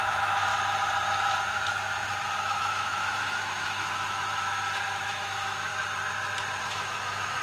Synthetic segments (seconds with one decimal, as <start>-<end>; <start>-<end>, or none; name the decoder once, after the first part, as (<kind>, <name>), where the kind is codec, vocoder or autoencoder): 0.0-0.5 (autoencoder, DAC-VAE); 2.4-5.7; 6.6-7.4